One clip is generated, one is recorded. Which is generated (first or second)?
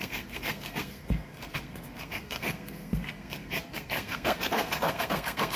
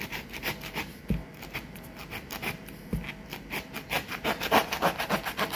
first